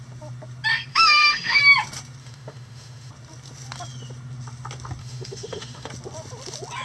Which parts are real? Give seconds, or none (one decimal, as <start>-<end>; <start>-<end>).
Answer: 0.0-0.9; 1.6-2.2; 3.1-5.0; 5.9-6.8